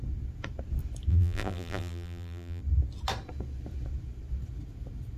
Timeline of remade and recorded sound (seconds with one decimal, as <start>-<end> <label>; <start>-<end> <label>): 0.0-1.1 recorded; 1.1-2.6 remade; 2.6-5.2 recorded